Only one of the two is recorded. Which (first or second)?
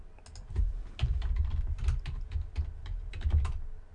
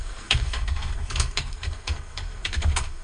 first